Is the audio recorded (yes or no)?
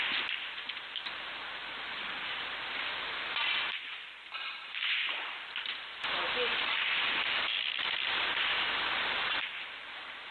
no